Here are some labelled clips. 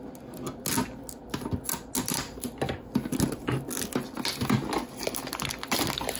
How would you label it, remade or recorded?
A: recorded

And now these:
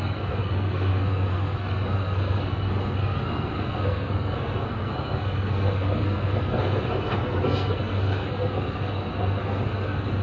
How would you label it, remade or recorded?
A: remade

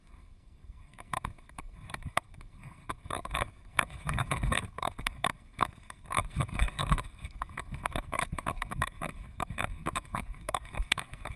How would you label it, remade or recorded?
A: remade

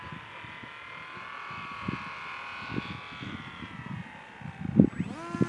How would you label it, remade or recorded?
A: recorded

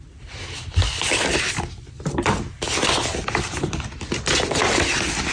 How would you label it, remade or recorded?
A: recorded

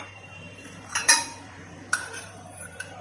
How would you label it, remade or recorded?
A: remade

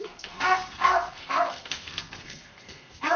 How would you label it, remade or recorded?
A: remade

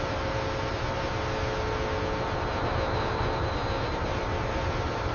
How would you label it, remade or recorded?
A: recorded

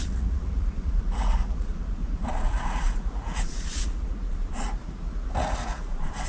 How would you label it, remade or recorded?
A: remade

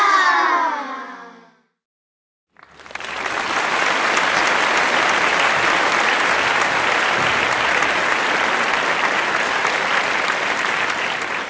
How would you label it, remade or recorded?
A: recorded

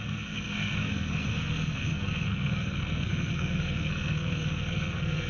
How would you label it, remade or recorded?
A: remade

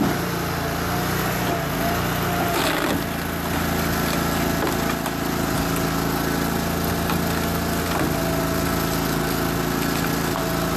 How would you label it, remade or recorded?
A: recorded